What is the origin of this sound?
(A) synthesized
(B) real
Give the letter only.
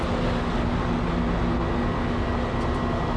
B